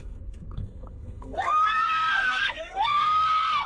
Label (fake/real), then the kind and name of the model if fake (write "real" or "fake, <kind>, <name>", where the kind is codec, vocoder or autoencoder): fake, codec, SNAC